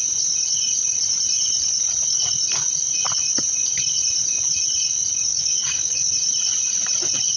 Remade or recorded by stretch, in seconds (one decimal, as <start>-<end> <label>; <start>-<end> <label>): 0.0-5.3 recorded; 5.3-6.1 remade; 6.1-7.4 recorded

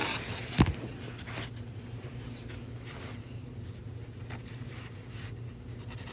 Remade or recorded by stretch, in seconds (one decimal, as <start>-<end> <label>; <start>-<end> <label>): 0.0-6.1 recorded

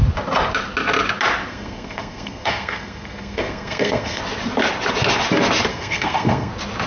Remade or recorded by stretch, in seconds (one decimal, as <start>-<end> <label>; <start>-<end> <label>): 0.0-1.5 recorded; 1.5-4.2 remade; 4.2-5.7 recorded; 5.7-6.5 remade; 6.5-6.9 recorded

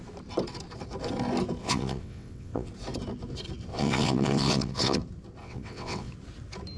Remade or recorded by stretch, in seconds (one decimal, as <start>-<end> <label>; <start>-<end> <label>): 0.0-1.6 recorded; 1.6-2.7 remade; 2.7-3.7 recorded; 3.7-5.0 remade; 5.0-5.4 recorded; 5.4-6.1 remade; 6.1-6.8 recorded

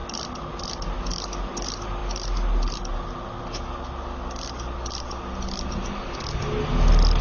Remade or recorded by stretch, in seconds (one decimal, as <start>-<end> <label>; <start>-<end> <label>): 0.0-7.2 recorded

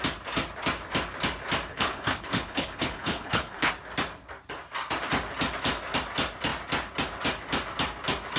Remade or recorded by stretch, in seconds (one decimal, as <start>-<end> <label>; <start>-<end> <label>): 0.0-1.7 recorded; 1.7-3.7 remade; 3.7-8.4 recorded

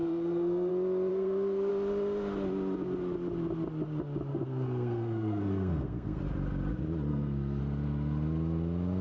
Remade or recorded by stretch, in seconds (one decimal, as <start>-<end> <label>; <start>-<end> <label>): 0.0-0.7 remade; 0.7-1.1 recorded; 1.1-1.7 remade; 1.7-4.3 recorded; 4.3-6.2 remade; 6.2-7.1 recorded; 7.1-7.6 remade; 7.6-9.0 recorded